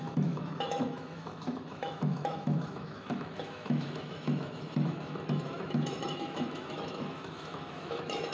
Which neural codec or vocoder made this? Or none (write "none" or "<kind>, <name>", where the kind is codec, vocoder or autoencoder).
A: autoencoder, DAC-VAE